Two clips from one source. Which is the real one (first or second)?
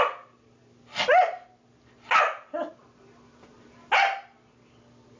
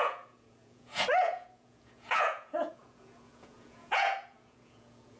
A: first